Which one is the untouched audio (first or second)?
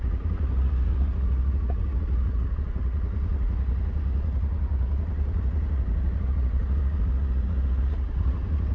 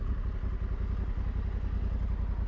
second